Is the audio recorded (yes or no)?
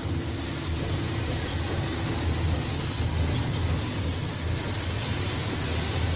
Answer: yes